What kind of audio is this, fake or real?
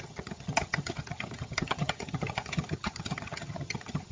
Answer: fake